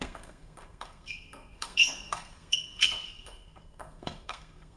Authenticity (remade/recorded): remade